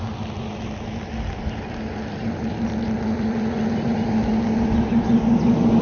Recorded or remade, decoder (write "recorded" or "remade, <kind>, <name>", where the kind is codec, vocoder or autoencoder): recorded